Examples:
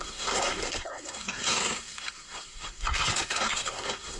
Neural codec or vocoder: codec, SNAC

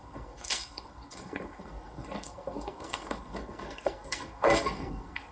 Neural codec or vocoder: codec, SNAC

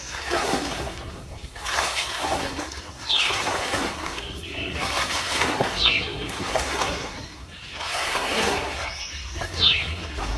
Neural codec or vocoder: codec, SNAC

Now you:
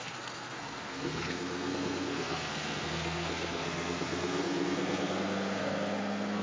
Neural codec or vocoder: codec, SNAC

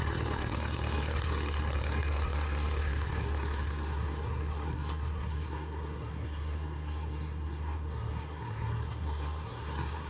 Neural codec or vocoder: codec, SNAC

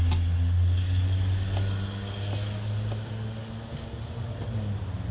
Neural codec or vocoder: none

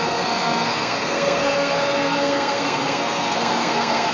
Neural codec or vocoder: codec, SNAC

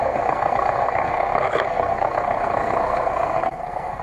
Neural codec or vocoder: codec, SNAC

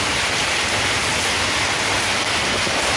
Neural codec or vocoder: none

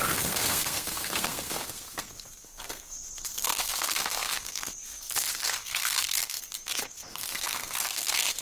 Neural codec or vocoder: codec, SNAC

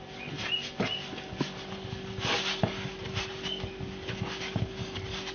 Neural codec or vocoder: none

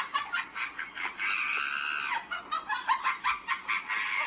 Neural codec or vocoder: none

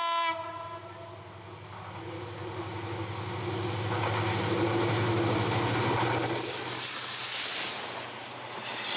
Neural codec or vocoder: none